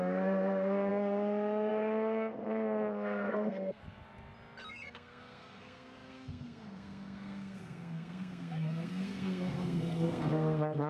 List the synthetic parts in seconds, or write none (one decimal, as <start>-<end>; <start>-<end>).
0.0-3.8; 4.7-10.9